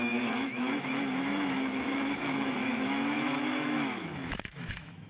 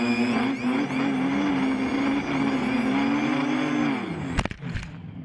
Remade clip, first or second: first